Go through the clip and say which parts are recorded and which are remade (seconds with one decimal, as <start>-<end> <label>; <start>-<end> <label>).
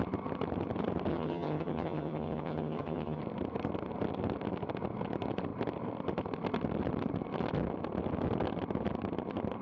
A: 0.0-1.1 recorded; 1.1-3.2 remade; 3.2-9.6 recorded